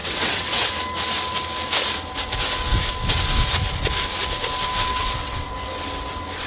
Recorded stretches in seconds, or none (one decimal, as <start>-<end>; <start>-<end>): 0.7-4.9; 5.5-6.5